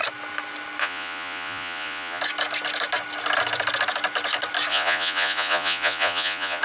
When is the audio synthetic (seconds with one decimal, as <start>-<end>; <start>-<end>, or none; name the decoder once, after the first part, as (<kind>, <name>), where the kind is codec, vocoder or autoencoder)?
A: 0.8-2.2 (vocoder, Vocos); 4.7-6.6